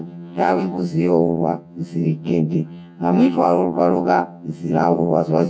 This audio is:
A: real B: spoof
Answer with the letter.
B